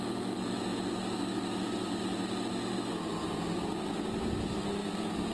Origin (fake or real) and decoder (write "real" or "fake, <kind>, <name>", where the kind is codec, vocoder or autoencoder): real